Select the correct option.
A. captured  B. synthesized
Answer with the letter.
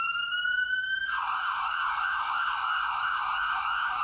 B